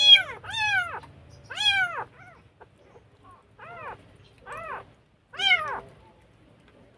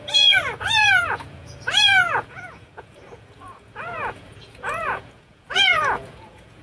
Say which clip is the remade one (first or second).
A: second